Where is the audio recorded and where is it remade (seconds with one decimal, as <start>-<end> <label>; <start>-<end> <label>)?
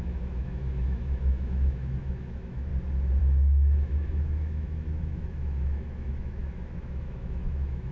0.0-2.7 remade; 2.7-3.2 recorded; 3.2-7.9 remade